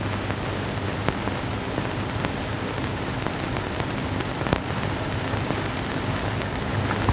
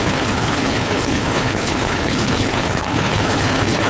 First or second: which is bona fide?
first